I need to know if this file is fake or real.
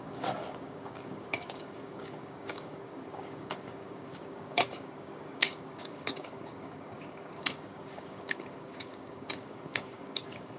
fake